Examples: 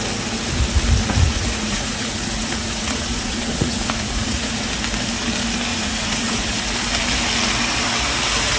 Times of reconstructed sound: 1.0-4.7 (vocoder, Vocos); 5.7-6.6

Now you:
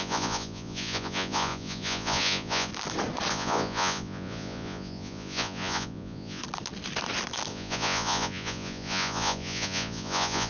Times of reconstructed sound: 0.0-2.7 (vocoder, Vocos); 3.3-6.4; 7.5-10.5

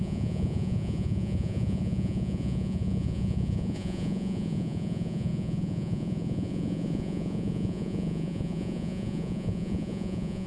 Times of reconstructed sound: 0.0-10.5 (vocoder, Vocos)